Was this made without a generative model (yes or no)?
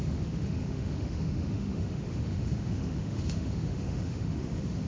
no